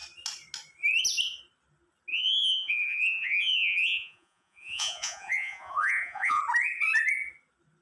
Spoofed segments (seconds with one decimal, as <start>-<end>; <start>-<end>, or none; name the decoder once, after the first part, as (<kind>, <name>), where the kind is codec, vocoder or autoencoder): 2.1-6.4 (vocoder, Vocos)